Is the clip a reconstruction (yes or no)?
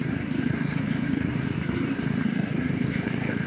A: yes